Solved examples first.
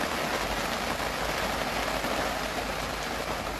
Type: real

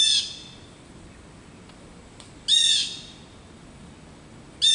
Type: real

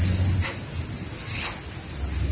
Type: real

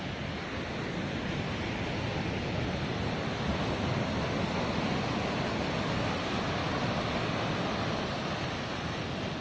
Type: real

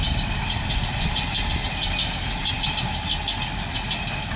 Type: real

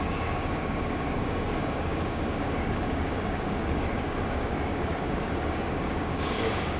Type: fake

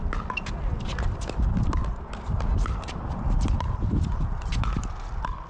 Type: real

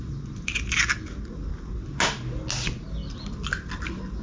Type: real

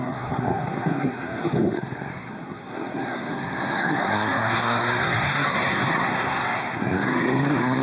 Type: fake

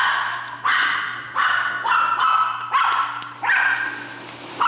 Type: real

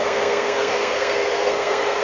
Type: fake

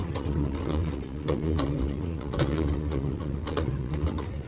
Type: fake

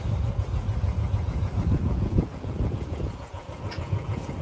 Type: fake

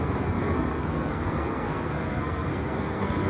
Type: fake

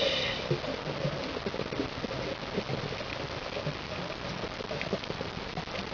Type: real